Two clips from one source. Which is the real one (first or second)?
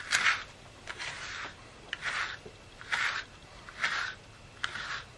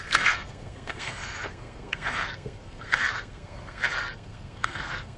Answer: first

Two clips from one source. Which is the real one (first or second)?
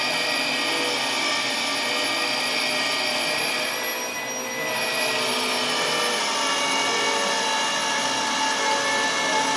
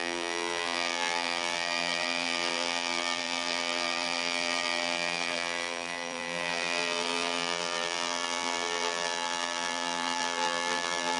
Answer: first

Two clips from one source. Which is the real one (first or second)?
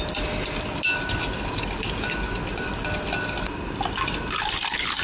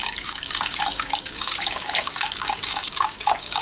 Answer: first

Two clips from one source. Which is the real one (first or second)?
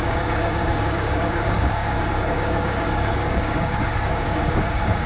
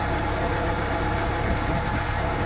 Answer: second